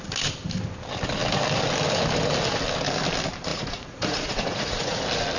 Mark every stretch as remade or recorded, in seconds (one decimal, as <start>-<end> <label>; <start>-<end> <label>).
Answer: 0.0-3.5 recorded; 3.5-5.0 remade; 5.0-5.4 recorded

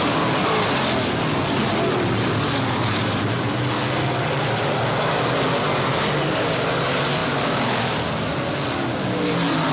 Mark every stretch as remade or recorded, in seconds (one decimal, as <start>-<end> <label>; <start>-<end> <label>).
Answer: 0.0-9.7 recorded

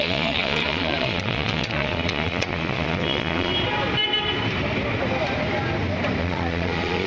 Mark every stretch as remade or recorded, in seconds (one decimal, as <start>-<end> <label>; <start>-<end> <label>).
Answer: 0.0-3.5 remade; 3.5-6.2 recorded; 6.2-7.1 remade

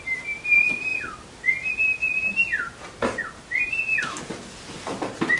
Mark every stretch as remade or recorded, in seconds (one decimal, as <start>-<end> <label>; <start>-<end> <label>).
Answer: 0.0-5.4 recorded